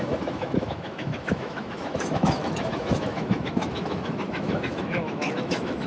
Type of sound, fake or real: fake